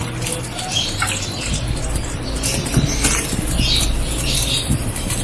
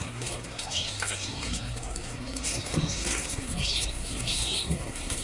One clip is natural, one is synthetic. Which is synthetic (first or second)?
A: second